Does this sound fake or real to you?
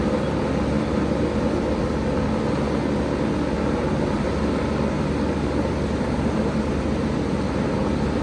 real